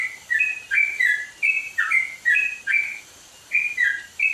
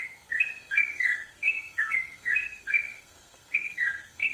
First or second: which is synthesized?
second